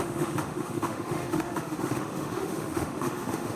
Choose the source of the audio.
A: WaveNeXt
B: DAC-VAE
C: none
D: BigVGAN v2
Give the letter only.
B